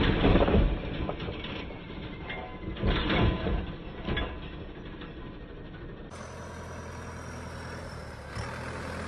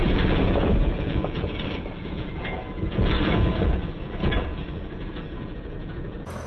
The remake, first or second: second